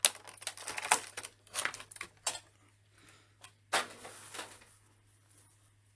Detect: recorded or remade recorded